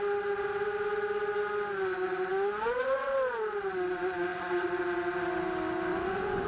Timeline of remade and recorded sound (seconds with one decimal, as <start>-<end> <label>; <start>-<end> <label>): 0.0-2.3 recorded; 2.3-3.1 remade; 3.1-4.3 recorded; 4.3-4.8 remade; 4.8-5.9 recorded; 5.9-6.5 remade